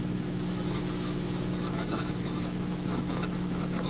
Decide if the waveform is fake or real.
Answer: fake